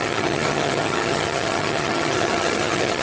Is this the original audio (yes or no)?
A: no